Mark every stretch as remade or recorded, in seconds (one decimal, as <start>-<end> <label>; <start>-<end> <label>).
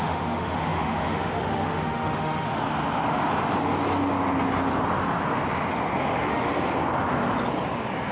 0.0-2.6 remade; 2.6-6.0 recorded; 6.0-6.5 remade; 6.5-8.1 recorded